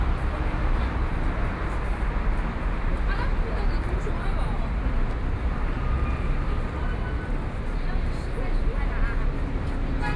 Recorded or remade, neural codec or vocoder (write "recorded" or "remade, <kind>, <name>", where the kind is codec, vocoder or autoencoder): recorded